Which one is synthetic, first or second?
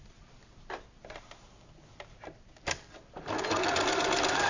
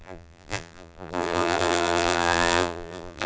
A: second